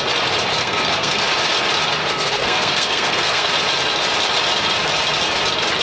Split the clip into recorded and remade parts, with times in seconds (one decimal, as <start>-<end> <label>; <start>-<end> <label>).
0.0-0.5 recorded; 0.5-1.2 remade; 1.2-2.0 recorded; 2.0-3.5 remade; 3.5-5.8 recorded